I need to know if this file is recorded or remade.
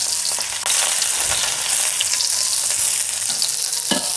recorded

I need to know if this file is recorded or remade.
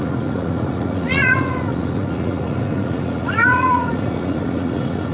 remade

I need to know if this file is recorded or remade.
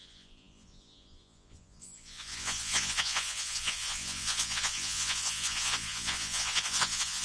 remade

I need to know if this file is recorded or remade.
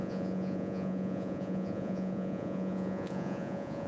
remade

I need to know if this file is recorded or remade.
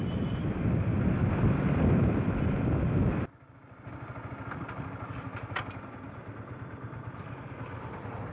recorded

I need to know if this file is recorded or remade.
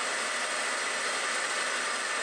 recorded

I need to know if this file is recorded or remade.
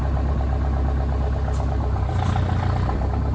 recorded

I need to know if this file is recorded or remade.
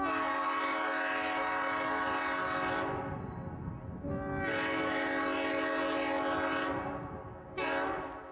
recorded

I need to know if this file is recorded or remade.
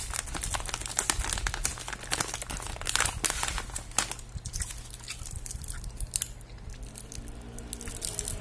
recorded